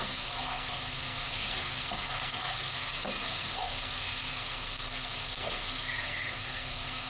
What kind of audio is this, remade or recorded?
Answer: remade